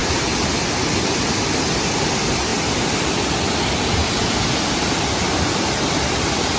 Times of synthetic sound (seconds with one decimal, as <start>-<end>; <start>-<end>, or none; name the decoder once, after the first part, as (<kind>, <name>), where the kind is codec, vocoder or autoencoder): none

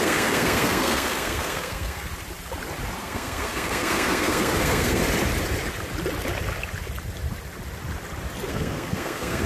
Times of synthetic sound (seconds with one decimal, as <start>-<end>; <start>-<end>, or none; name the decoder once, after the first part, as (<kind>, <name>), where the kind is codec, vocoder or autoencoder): 0.0-2.1 (codec, SNAC); 3.0-5.0; 8.5-9.5

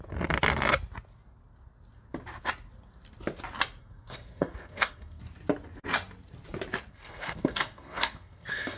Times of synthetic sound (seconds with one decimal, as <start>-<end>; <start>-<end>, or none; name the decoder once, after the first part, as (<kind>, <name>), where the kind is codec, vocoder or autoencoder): 3.8-5.2 (codec, SNAC); 6.9-8.8

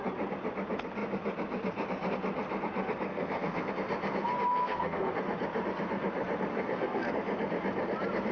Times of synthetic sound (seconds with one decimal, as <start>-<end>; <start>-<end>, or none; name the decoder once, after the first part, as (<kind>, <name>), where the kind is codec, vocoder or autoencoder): 3.1-3.7 (codec, SNAC); 4.5-5.1; 6.5-7.1

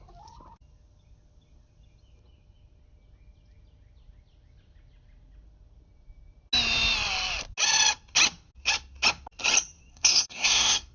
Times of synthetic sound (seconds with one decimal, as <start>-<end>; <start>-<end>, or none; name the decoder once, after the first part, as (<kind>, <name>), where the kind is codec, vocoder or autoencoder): 9.9-10.9 (codec, SNAC)